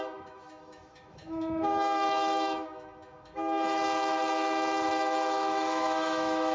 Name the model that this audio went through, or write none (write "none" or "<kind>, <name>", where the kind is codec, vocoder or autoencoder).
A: autoencoder, DAC-VAE